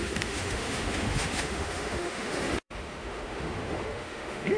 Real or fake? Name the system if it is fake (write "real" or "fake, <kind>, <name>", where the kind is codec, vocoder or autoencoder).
fake, autoencoder, DAC-VAE